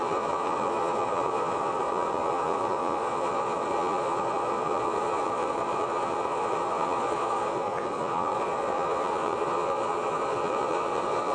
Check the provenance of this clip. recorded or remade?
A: remade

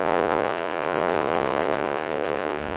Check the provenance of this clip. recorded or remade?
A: remade